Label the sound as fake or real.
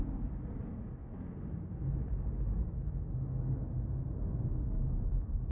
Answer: real